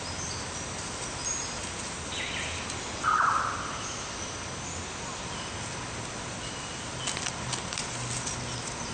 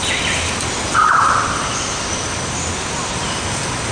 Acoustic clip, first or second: first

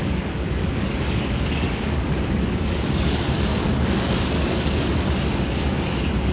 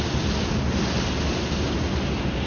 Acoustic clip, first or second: second